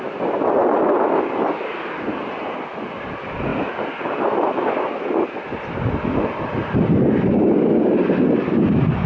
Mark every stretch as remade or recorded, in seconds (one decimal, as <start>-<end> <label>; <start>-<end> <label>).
0.0-9.1 recorded